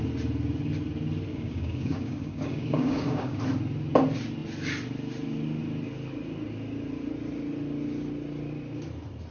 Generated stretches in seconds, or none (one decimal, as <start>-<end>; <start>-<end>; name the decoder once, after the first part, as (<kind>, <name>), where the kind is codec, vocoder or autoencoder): 1.3-3.4 (codec, DAC)